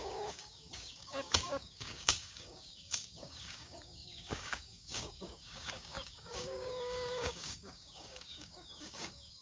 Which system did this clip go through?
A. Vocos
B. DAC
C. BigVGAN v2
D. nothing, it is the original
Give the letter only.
B